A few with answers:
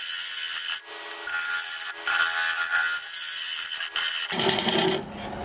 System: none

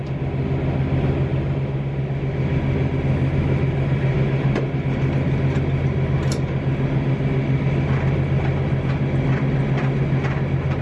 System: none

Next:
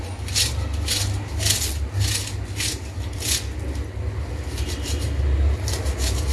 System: none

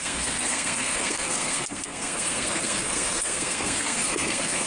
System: codec, SNAC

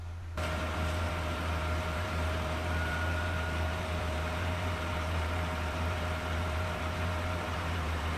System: vocoder, BigVGAN v2